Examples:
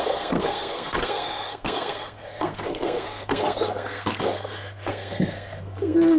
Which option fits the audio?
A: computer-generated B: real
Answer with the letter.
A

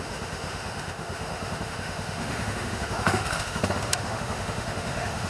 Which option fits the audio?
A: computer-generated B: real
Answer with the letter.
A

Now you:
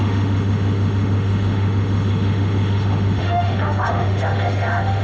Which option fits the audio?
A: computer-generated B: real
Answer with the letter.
A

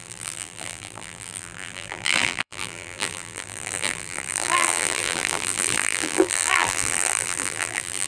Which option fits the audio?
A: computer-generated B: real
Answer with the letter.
A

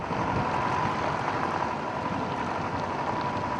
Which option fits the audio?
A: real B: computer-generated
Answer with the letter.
A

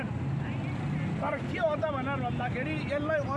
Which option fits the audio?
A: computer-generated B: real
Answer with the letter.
B